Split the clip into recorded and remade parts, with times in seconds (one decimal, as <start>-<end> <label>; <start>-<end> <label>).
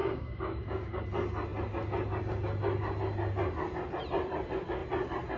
0.0-1.0 remade; 1.0-5.4 recorded